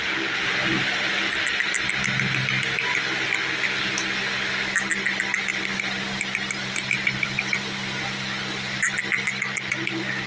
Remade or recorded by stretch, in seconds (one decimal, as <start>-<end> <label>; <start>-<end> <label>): 0.0-5.5 recorded; 5.5-6.7 remade; 6.7-10.3 recorded